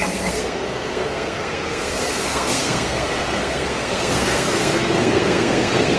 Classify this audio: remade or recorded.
remade